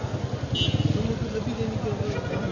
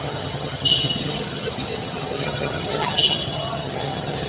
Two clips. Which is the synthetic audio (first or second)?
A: second